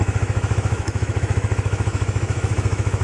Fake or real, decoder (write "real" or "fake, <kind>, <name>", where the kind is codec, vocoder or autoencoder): fake, autoencoder, DAC-VAE